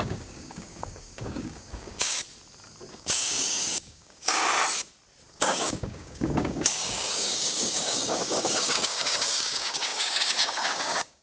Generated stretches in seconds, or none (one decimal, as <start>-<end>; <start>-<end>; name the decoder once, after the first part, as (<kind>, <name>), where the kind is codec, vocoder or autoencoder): 0.0-2.2 (codec, DAC); 2.9-4.4; 5.3-11.2